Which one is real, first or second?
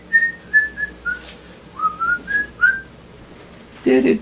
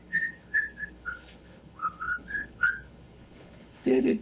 first